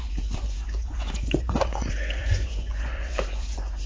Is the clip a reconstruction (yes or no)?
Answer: yes